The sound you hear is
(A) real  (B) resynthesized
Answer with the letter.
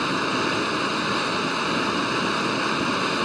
A